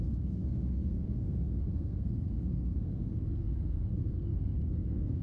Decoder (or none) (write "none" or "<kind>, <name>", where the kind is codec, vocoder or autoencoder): codec, SNAC